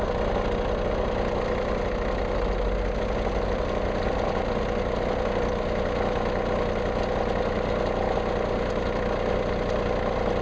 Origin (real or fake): real